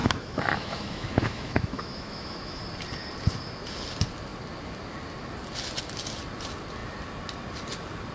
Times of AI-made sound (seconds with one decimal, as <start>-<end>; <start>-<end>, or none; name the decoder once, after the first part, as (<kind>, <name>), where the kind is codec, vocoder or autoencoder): 0.0-2.6 (autoencoder, DAC-VAE)